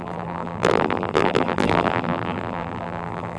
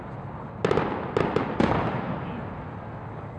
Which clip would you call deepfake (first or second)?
first